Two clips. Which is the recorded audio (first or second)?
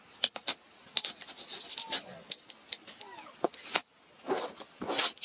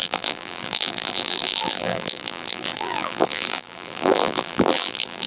first